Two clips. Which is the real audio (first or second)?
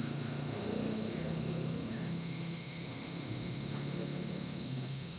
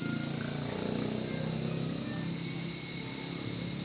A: second